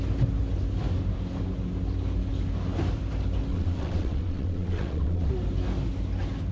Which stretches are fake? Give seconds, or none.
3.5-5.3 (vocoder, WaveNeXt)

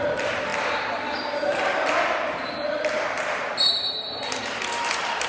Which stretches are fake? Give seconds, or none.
none

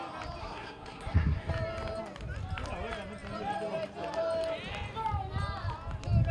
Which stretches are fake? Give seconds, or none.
0.4-1.5 (codec, SNAC)

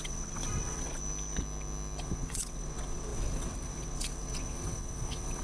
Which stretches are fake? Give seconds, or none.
0.0-1.0 (vocoder, WaveNeXt); 2.0-5.4

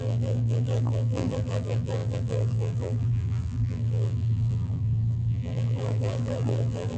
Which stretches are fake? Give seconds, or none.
0.0-7.0 (vocoder, BigVGAN v2)

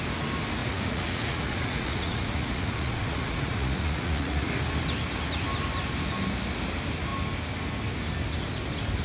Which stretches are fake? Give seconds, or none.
0.6-4.5 (vocoder, Vocos)

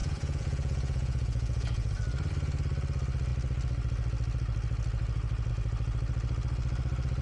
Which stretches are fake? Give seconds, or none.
0.0-1.9 (vocoder, Vocos)

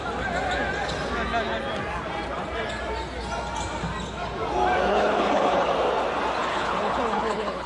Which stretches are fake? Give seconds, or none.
4.9-5.7 (codec, HILCodec); 6.5-7.7